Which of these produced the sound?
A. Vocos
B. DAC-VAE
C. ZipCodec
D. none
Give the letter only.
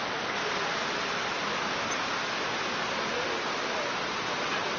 D